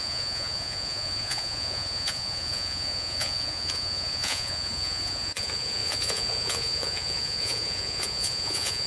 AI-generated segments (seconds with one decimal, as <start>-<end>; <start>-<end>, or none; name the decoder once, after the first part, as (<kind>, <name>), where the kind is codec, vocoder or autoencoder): 0.0-8.9 (vocoder, Vocos)